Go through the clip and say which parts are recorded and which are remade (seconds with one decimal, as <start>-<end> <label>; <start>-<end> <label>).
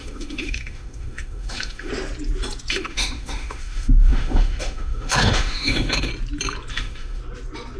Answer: 0.0-1.9 remade; 1.9-2.7 recorded; 2.7-6.1 remade; 6.1-6.7 recorded; 6.7-7.2 remade; 7.2-7.8 recorded